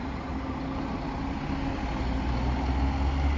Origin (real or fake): real